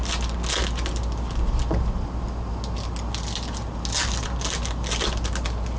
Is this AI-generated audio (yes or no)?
no